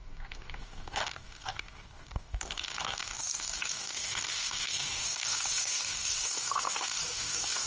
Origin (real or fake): fake